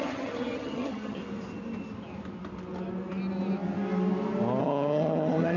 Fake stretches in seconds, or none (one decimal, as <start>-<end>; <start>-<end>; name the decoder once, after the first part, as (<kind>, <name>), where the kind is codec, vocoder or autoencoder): 0.0-1.2 (vocoder, HiFi-GAN); 4.6-5.6